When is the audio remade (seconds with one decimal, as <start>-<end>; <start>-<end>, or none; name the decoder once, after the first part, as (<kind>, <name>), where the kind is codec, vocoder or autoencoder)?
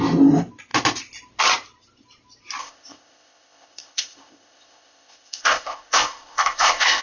2.6-7.0 (codec, ZipCodec)